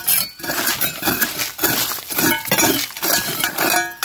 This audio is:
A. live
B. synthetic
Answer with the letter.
A